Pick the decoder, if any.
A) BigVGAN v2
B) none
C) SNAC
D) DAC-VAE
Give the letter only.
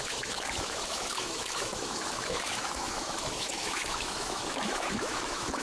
D